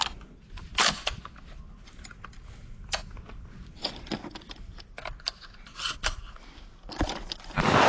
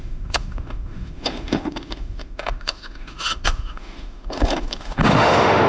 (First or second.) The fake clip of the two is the second